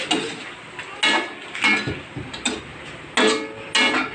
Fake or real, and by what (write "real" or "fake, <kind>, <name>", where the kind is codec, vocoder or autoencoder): real